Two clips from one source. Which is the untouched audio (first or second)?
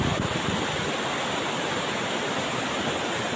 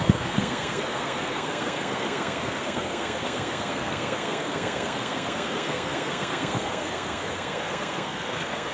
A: first